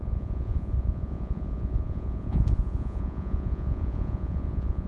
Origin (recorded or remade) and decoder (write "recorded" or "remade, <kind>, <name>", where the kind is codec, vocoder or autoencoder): remade, vocoder, Vocos